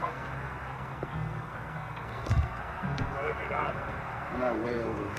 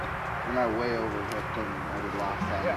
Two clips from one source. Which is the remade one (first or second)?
first